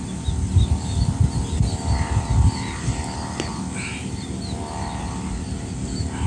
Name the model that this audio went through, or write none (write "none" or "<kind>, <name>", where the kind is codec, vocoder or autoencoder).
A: none